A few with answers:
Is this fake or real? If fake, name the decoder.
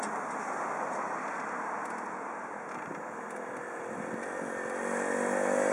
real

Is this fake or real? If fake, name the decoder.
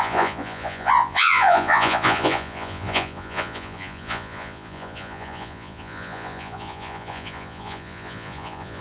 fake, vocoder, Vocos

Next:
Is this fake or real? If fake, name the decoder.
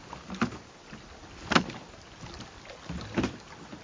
real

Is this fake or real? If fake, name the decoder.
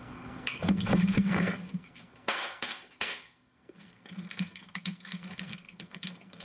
fake, codec, SNAC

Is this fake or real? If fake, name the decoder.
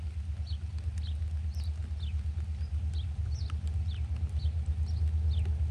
real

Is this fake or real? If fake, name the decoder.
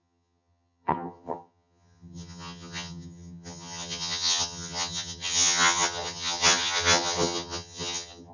fake, vocoder, HiFi-GAN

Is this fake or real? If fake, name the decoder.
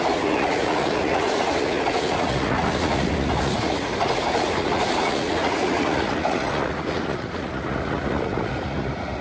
fake, vocoder, Vocos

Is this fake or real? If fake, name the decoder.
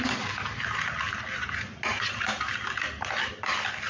real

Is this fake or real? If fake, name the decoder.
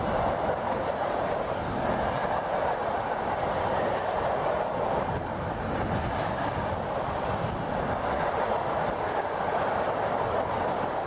real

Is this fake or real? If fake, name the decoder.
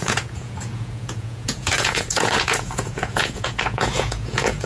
fake, vocoder, Vocos